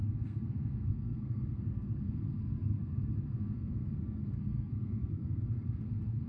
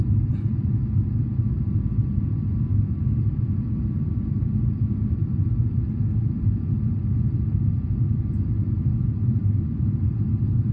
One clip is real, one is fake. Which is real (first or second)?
second